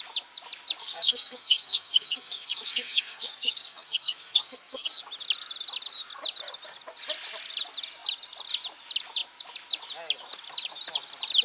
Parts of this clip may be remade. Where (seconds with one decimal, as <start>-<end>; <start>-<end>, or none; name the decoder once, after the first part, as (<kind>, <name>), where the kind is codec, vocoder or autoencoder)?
0.8-5.0 (codec, SNAC)